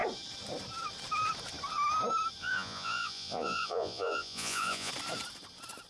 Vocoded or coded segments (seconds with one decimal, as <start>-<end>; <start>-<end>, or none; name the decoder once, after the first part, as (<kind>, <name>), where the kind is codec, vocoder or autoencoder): 2.4-4.9 (vocoder, Vocos)